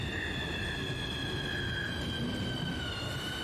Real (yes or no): yes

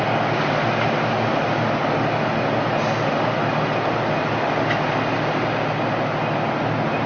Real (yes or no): yes